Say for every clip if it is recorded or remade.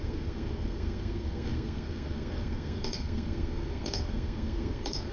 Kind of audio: remade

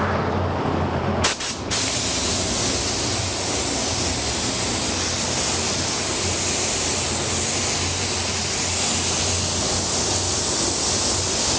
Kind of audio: recorded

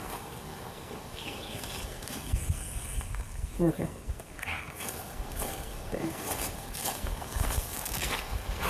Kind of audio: remade